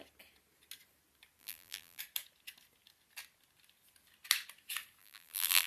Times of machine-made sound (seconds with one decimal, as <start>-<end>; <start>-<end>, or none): 1.4-2.0; 5.0-5.7

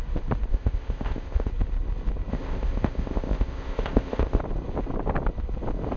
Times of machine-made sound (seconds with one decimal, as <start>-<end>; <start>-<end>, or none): 0.5-1.5; 2.3-4.4

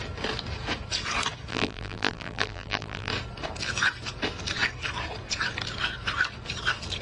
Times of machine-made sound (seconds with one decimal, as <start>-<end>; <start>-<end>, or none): 1.5-3.1

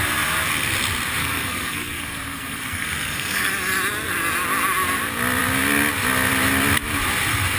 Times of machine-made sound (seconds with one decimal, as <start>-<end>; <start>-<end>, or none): 1.2-3.5